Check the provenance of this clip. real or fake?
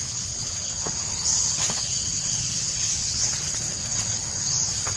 fake